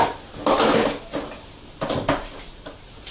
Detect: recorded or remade recorded